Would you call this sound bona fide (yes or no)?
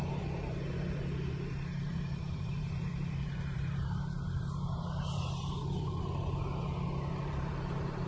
no